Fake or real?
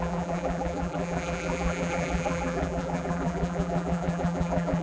fake